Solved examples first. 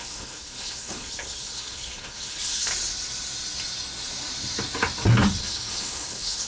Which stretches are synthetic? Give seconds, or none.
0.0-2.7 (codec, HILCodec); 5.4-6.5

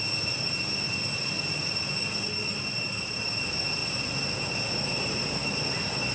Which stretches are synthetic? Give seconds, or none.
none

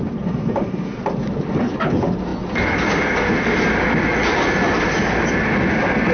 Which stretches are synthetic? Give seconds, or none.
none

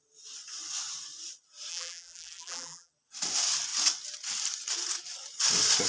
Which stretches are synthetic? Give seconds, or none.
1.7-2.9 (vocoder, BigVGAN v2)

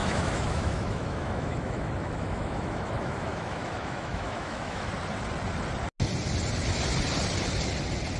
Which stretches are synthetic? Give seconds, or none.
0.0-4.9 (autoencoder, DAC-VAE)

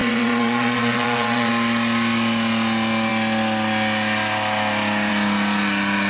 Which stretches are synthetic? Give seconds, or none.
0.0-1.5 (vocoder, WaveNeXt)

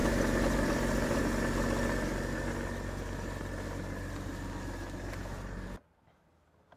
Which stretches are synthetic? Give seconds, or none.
0.0-1.2 (vocoder, BigVGAN v2)